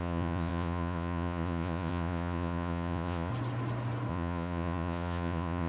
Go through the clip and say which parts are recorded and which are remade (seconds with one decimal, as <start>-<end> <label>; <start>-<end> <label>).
0.0-3.3 remade; 3.3-4.1 recorded; 4.1-5.7 remade